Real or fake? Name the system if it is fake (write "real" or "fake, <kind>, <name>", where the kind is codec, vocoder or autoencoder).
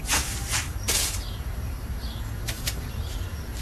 fake, vocoder, BigVGAN v2